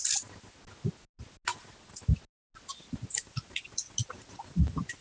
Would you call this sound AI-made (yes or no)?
no